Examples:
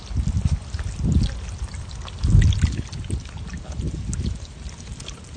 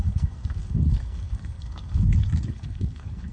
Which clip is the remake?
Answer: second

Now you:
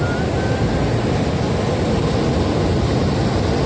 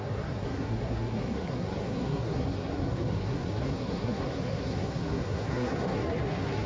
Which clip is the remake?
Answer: second